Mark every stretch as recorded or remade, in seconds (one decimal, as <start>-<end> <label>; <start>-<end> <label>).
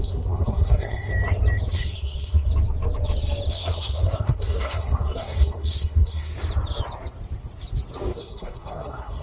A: 0.0-1.1 remade; 1.1-1.7 recorded; 1.7-2.5 remade; 2.5-3.5 recorded; 3.5-6.3 remade; 6.3-8.2 recorded; 8.2-9.2 remade